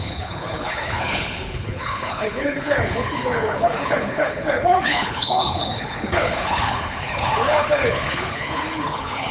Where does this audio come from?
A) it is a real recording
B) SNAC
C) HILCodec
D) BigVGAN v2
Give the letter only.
C